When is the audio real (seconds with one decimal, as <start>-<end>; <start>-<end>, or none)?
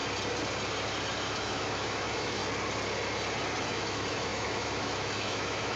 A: 0.0-1.3; 2.4-3.6